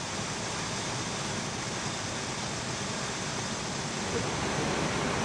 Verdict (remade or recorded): recorded